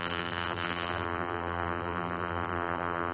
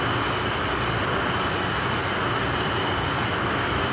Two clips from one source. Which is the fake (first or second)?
first